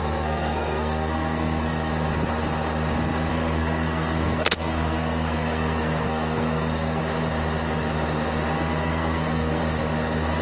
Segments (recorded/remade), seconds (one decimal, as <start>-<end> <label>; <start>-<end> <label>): 0.0-1.9 remade; 1.9-3.3 recorded; 3.3-7.0 remade; 7.0-8.8 recorded; 8.8-9.6 remade; 9.6-10.4 recorded